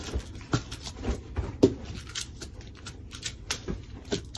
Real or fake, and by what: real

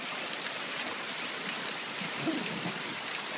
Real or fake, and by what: real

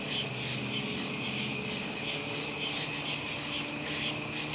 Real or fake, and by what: real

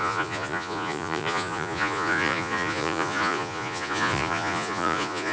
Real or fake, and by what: fake, vocoder, Vocos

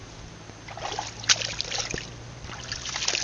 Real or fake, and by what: real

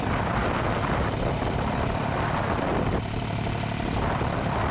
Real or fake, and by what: fake, vocoder, BigVGAN v2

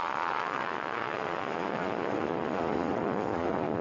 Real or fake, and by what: fake, vocoder, Vocos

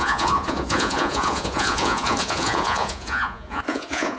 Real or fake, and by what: fake, vocoder, Vocos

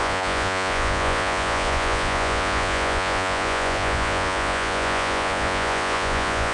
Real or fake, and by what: fake, vocoder, Vocos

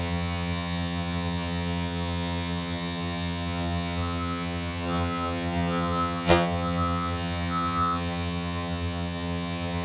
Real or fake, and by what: fake, vocoder, HiFi-GAN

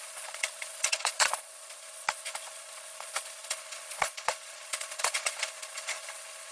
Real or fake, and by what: fake, vocoder, Vocos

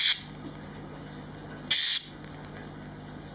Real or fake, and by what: real